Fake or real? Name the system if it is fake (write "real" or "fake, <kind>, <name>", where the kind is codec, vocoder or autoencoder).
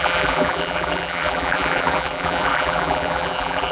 fake, vocoder, BigVGAN v2